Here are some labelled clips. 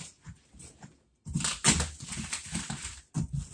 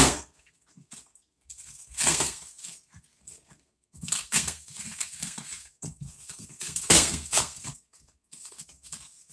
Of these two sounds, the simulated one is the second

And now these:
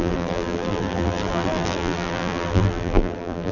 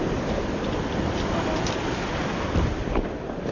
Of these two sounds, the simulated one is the first